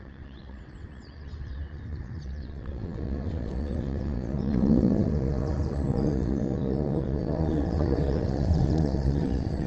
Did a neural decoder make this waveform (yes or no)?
yes